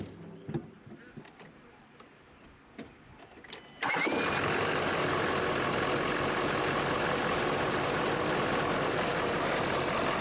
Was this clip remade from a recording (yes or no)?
no